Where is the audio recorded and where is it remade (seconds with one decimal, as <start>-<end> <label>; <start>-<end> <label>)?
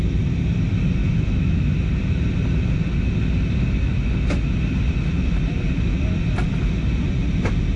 0.0-1.0 recorded; 1.0-1.7 remade; 1.7-7.8 recorded